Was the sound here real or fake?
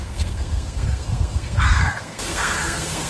fake